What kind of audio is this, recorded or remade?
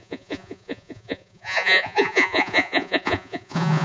remade